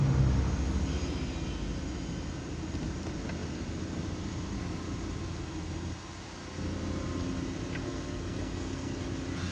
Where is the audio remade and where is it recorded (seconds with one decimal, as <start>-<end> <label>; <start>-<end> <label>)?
0.0-7.8 recorded; 7.8-9.0 remade; 9.0-9.5 recorded